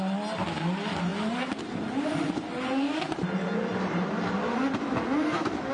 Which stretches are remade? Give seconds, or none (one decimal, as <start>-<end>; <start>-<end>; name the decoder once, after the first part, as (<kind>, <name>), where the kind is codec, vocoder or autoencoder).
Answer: none